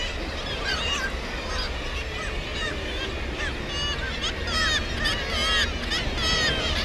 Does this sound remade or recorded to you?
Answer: recorded